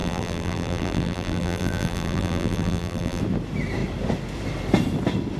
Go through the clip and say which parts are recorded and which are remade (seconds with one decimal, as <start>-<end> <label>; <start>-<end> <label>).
0.0-3.2 remade; 3.2-5.4 recorded

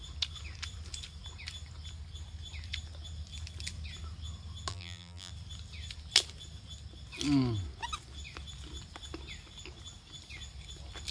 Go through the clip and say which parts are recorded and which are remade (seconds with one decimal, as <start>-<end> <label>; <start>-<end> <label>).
0.0-4.7 recorded; 4.7-5.3 remade; 5.3-11.1 recorded

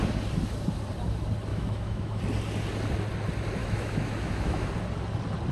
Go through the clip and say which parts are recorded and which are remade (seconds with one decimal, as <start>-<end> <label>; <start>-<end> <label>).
0.0-1.5 recorded; 1.5-2.2 remade; 2.2-3.6 recorded; 3.6-4.7 remade; 4.7-5.5 recorded

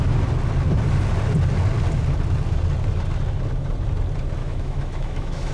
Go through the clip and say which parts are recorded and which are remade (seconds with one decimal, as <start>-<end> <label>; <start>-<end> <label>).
0.0-4.4 recorded; 4.4-5.5 remade

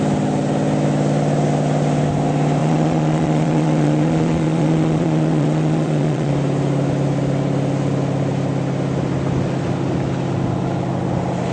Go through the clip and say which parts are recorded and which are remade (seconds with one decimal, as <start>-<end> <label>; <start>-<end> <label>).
0.0-2.6 recorded; 2.6-6.3 remade; 6.3-11.5 recorded

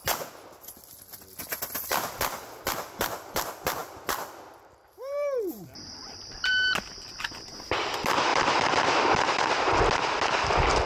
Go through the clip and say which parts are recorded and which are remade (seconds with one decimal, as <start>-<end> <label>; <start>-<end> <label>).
0.0-3.8 recorded; 3.8-6.5 remade; 6.5-8.3 recorded; 8.3-9.8 remade; 9.8-10.9 recorded

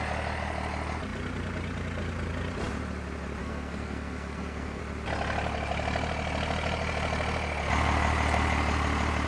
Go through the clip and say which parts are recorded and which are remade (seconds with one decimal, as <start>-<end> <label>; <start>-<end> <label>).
0.0-3.4 recorded; 3.4-4.8 remade; 4.8-9.3 recorded

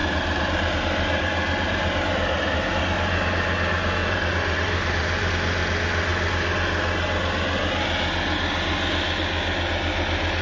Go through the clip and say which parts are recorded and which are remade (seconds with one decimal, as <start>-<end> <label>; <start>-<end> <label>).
0.0-2.8 remade; 2.8-4.0 recorded; 4.0-5.3 remade; 5.3-10.4 recorded